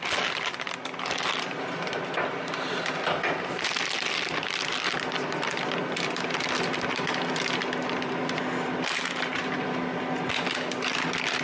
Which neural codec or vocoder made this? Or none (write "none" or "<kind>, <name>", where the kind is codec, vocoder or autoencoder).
none